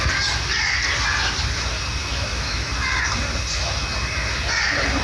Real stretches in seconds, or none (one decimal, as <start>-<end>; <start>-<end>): 0.0-2.0; 2.7-5.0